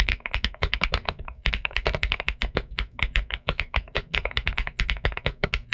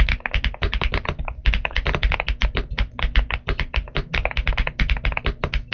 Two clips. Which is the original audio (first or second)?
second